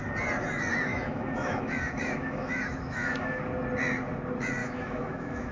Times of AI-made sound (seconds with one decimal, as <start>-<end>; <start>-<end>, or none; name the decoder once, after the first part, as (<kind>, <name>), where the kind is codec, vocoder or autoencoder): 0.9-3.4 (autoencoder, DAC-VAE); 4.6-5.5